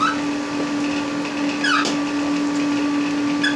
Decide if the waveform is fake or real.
real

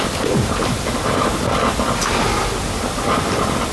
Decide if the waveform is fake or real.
real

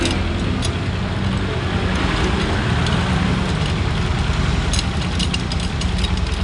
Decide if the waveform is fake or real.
real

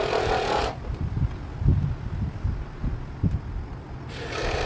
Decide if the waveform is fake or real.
real